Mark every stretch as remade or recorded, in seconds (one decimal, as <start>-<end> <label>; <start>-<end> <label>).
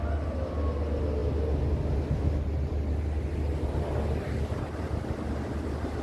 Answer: 0.0-6.0 recorded